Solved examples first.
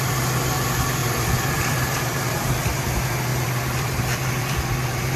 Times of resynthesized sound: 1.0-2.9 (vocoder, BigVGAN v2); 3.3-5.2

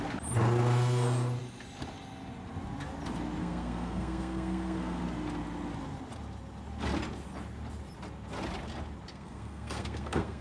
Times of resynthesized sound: 3.4-5.0 (codec, SNAC); 9.1-10.4

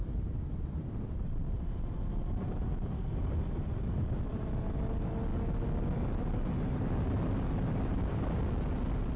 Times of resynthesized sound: none

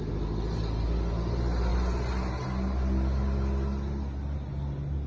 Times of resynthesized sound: none

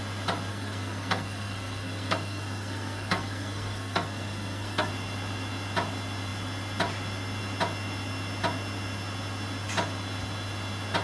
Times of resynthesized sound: 0.5-4.9 (codec, SNAC)